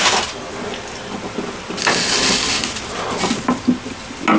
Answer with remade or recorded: recorded